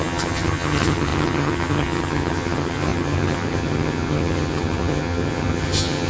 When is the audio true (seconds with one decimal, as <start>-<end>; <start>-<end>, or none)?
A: none